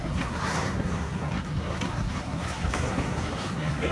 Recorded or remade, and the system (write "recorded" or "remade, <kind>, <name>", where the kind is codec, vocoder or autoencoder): remade, codec, SNAC